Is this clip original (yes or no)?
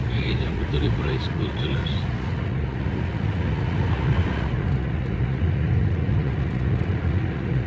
no